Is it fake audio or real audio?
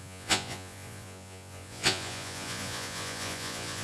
fake